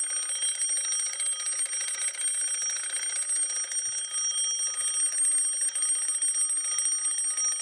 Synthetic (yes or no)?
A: no